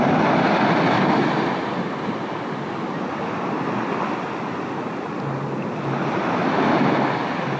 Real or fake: real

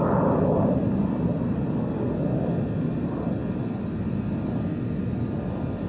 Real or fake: real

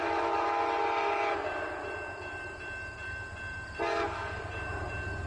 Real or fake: fake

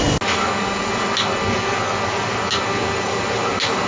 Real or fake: real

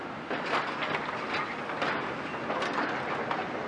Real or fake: real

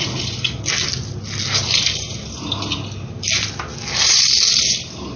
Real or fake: real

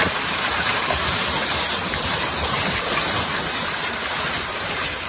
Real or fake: fake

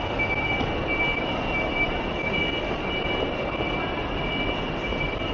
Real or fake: real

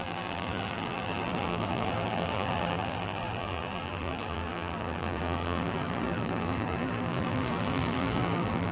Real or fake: fake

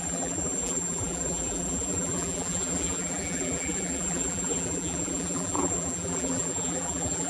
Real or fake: fake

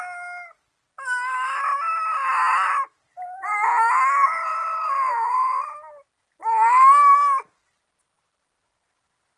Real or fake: real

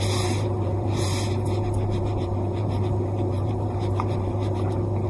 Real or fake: fake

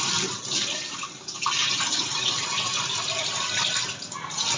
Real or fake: fake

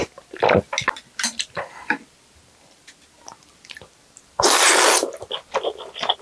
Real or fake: real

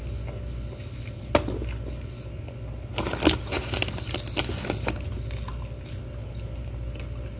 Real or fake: real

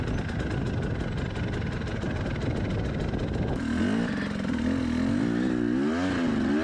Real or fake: real